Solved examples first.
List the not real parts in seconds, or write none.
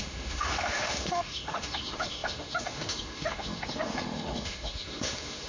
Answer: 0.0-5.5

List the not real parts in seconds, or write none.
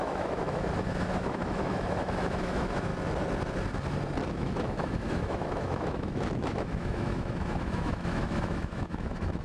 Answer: 0.0-2.9; 4.3-9.4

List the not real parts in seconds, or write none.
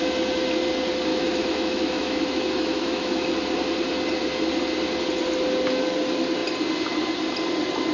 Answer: 1.1-3.3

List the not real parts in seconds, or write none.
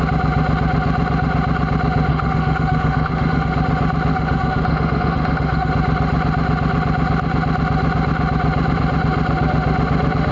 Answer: 2.1-3.5; 4.1-5.7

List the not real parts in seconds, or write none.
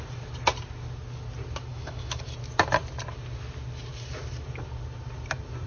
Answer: 1.7-2.2